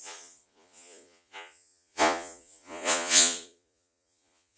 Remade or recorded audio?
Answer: remade